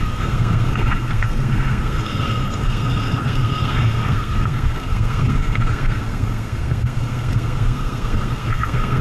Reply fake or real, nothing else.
fake